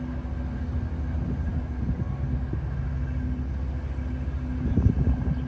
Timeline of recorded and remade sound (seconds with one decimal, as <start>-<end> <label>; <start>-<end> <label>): 0.0-5.5 recorded